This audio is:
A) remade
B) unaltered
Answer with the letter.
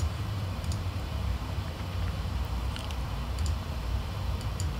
A